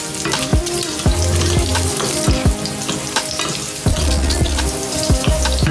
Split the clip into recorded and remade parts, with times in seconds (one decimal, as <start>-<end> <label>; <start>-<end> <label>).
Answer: 0.0-3.9 recorded; 3.9-4.6 remade; 4.6-5.7 recorded

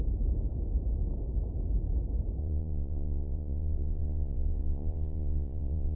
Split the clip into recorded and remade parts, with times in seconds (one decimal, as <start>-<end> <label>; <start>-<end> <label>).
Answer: 0.0-2.4 recorded; 2.4-6.0 remade

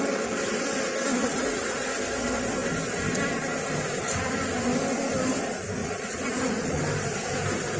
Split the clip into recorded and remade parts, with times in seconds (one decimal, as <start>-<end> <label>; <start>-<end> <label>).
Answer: 0.0-1.3 recorded; 1.3-1.9 remade; 1.9-5.8 recorded; 5.8-6.8 remade; 6.8-7.8 recorded

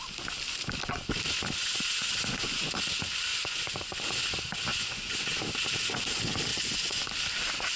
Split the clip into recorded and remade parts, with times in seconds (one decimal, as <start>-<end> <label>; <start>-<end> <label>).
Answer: 0.0-1.6 recorded; 1.6-2.8 remade; 2.8-3.3 recorded; 3.3-4.0 remade; 4.0-4.7 recorded; 4.7-5.4 remade; 5.4-6.5 recorded; 6.5-7.0 remade; 7.0-7.8 recorded

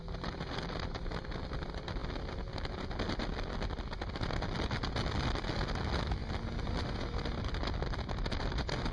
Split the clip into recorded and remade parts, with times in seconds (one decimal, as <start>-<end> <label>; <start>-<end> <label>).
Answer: 0.0-8.9 recorded

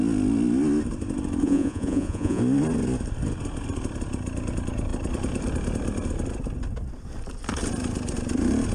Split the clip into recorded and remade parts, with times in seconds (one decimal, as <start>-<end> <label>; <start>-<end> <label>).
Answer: 0.0-1.4 recorded; 1.4-2.4 remade; 2.4-8.7 recorded

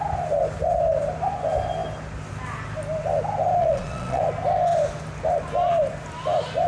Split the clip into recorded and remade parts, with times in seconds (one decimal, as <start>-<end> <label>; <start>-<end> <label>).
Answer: 0.0-3.6 recorded; 3.6-4.2 remade; 4.2-6.7 recorded